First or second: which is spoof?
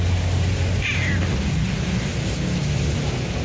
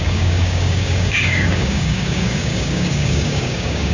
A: second